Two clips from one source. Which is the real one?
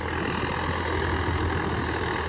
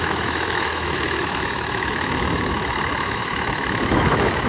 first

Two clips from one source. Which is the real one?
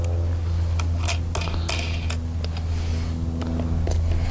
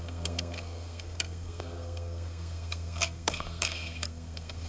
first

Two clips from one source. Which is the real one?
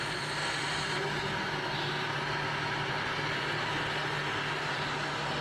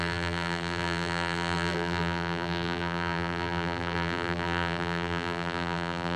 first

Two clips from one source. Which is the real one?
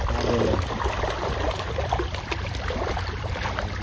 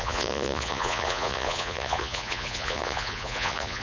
first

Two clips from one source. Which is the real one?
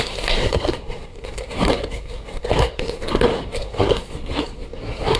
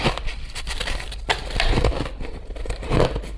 second